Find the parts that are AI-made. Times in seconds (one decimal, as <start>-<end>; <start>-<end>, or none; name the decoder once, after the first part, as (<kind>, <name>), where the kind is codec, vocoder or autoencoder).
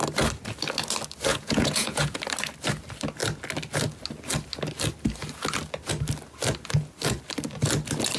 1.3-2.2 (vocoder, Vocos)